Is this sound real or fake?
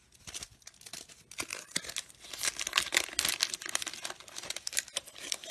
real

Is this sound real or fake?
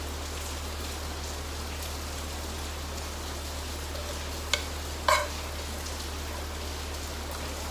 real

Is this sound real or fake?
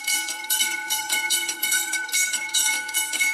fake